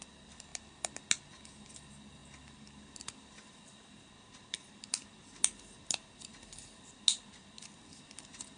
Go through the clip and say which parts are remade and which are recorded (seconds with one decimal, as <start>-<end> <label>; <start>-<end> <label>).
0.0-8.6 recorded